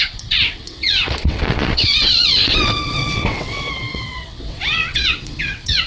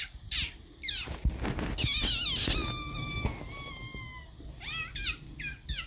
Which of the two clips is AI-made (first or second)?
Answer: first